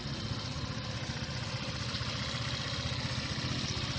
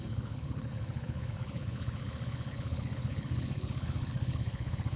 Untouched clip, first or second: first